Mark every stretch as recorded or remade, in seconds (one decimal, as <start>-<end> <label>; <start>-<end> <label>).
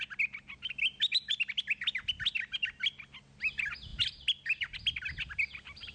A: 0.0-5.9 recorded